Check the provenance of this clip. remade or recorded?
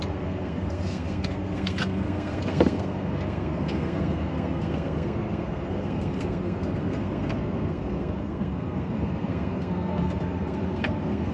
remade